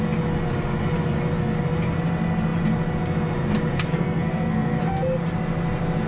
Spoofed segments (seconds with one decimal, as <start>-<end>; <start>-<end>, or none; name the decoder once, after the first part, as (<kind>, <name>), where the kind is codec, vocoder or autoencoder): 3.9-4.8 (codec, SNAC)